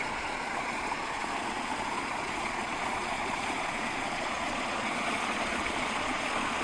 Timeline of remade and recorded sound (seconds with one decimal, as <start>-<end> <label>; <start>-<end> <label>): 0.0-6.6 remade